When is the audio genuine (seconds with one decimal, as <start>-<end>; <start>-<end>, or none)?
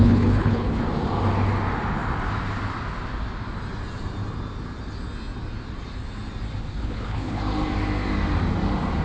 0.8-6.6; 7.4-9.0